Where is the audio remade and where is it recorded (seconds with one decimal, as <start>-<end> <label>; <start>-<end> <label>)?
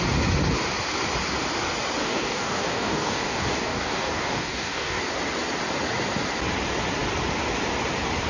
0.0-2.0 recorded; 2.0-5.0 remade; 5.0-8.3 recorded